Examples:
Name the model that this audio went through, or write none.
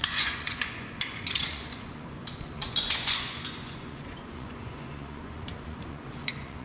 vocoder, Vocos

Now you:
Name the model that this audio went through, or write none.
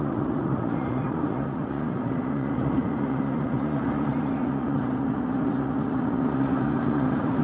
vocoder, Vocos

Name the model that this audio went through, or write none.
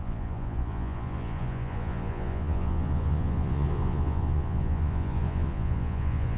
vocoder, Vocos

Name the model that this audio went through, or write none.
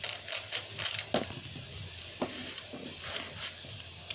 none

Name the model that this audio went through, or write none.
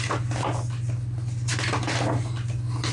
none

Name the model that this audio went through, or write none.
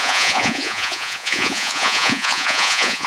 vocoder, Vocos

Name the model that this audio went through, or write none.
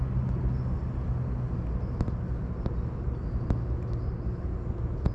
none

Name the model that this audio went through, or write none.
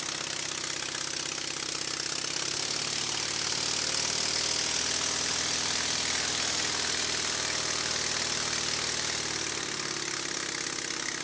none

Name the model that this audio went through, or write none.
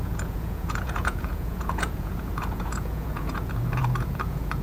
vocoder, Vocos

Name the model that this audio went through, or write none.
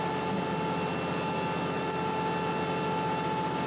none